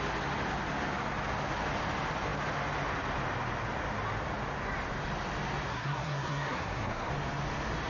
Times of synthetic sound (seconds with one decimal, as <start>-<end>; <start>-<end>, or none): 5.7-7.1